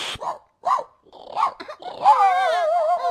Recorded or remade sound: recorded